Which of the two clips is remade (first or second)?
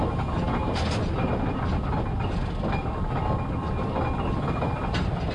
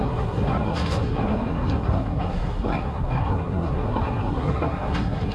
second